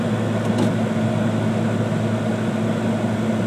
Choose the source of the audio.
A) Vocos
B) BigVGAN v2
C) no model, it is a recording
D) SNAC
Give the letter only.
C